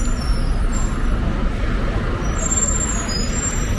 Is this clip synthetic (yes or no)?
no